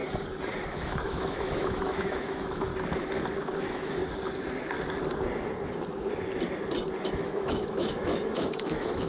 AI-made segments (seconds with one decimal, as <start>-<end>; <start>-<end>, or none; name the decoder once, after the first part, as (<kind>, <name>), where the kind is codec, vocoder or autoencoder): 0.7-2.7 (autoencoder, DAC-VAE); 3.6-4.0; 7.1-9.1